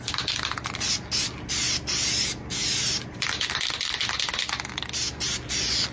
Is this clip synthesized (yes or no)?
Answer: no